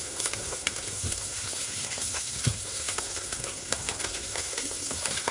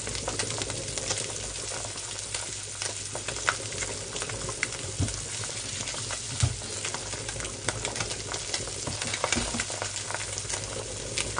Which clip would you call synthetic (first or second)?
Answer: first